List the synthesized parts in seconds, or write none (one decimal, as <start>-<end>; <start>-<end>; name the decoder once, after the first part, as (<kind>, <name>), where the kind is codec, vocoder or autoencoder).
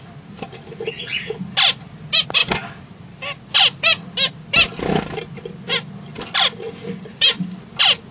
none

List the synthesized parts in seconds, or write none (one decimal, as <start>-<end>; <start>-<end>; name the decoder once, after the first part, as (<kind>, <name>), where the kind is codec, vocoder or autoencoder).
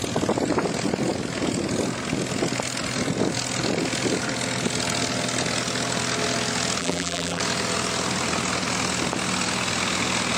6.8-7.4 (vocoder, BigVGAN v2)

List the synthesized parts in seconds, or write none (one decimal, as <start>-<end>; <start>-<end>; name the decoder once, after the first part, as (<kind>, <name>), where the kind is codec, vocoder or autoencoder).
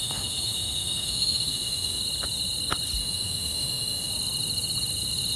0.0-2.0 (autoencoder, DAC-VAE); 3.0-4.1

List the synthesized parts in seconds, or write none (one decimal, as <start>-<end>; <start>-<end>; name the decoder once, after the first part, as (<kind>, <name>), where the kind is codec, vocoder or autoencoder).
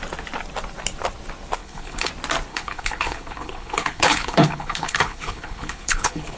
1.6-2.1 (codec, HILCodec); 2.5-6.4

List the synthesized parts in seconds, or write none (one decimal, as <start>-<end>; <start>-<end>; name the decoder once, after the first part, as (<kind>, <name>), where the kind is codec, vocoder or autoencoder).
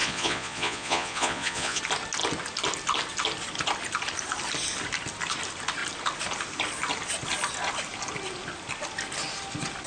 0.0-1.8 (vocoder, Vocos)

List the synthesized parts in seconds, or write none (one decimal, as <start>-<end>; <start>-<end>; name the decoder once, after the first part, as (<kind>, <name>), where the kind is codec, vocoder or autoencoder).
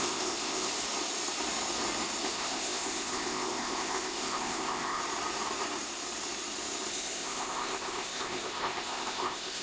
0.0-0.7 (codec, ZipCodec); 2.2-5.0; 6.9-9.6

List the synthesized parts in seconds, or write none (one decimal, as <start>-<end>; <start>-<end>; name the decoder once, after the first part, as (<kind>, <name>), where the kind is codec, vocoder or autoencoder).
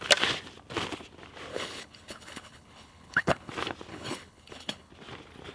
1.5-3.5 (codec, HILCodec); 3.9-4.9